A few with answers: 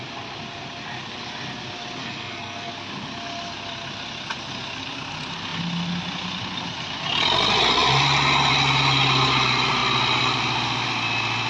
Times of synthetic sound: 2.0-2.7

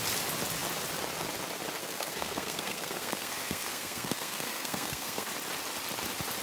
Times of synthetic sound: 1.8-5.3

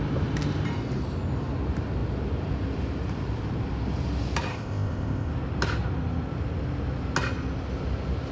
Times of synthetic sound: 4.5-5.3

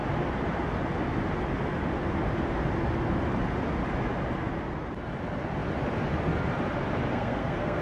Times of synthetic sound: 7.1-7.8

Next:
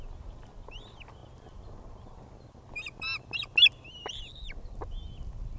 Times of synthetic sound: none

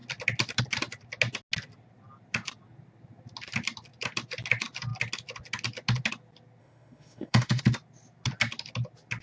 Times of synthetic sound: 6.6-7.6